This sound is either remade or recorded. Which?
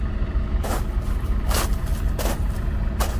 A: recorded